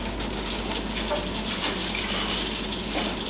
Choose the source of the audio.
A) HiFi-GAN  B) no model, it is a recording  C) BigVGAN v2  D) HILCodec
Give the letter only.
B